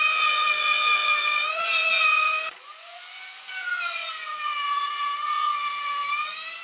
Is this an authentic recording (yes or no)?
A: no